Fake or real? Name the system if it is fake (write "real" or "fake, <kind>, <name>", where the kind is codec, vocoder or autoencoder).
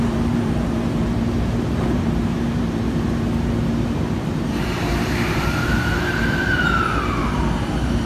fake, vocoder, BigVGAN v2